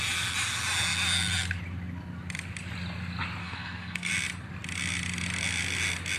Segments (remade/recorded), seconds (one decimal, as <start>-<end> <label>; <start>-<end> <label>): 0.0-3.4 recorded; 3.4-4.1 remade; 4.1-6.2 recorded